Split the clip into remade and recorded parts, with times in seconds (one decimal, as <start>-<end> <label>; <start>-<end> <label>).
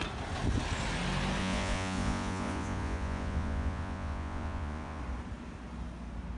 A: 0.0-1.4 recorded; 1.4-5.0 remade; 5.0-6.4 recorded